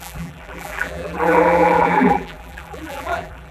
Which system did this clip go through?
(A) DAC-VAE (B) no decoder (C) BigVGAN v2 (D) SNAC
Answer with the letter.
C